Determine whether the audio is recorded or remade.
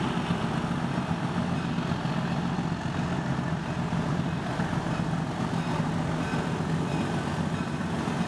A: recorded